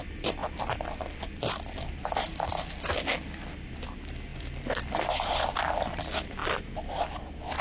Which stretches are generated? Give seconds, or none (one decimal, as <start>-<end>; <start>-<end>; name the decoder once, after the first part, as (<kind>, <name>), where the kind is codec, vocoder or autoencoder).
0.4-1.9 (vocoder, BigVGAN v2); 4.3-6.0